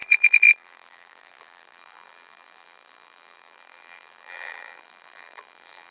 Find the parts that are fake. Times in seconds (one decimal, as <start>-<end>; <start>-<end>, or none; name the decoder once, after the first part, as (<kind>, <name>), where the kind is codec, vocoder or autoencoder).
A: 0.0-5.9 (vocoder, BigVGAN v2)